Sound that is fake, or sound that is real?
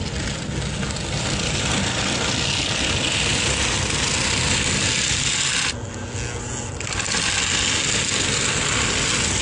real